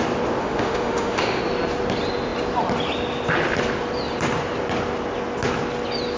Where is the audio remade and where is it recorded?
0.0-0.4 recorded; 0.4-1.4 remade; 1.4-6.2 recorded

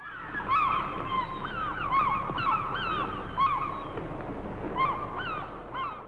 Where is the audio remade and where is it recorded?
0.0-6.1 recorded

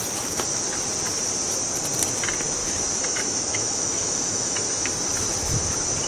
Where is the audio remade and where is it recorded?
0.0-2.6 recorded; 2.6-4.9 remade; 4.9-6.1 recorded

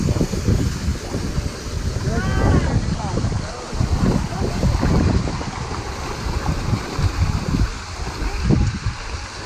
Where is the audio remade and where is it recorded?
0.0-9.5 recorded

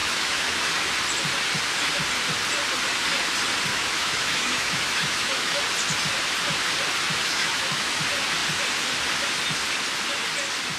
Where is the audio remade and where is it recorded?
0.0-0.6 remade; 0.6-3.7 recorded; 3.7-5.6 remade; 5.6-7.2 recorded; 7.2-8.0 remade; 8.0-10.8 recorded

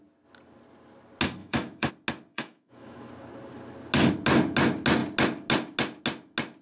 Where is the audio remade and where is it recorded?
0.0-1.4 recorded; 1.4-1.9 remade; 1.9-2.3 recorded; 2.3-3.1 remade; 3.1-6.6 recorded